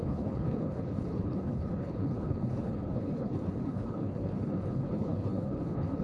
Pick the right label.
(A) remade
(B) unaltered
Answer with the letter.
A